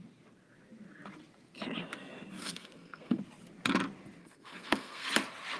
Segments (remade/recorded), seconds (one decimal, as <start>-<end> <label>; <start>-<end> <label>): 0.0-2.4 recorded; 2.4-3.2 remade; 3.2-4.2 recorded; 4.2-5.1 remade; 5.1-5.6 recorded